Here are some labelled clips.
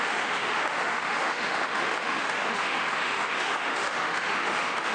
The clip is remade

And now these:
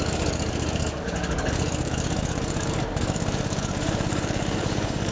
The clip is remade